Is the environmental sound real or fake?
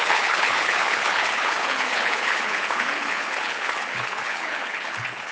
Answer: fake